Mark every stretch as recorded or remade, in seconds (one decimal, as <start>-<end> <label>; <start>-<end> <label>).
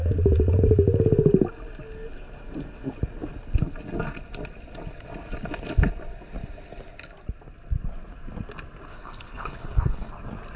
0.0-8.9 recorded; 8.9-10.1 remade; 10.1-10.6 recorded